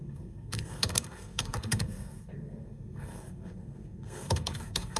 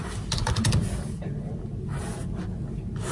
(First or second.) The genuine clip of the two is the second